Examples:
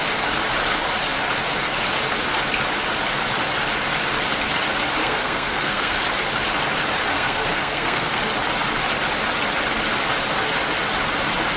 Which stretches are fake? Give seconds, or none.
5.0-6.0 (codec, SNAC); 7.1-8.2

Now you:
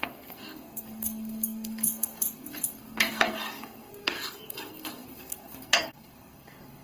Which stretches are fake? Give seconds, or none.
0.0-6.8 (codec, SNAC)